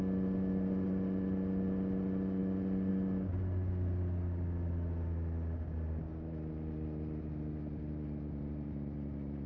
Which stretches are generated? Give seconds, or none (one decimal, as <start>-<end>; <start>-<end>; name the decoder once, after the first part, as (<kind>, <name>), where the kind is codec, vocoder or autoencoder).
none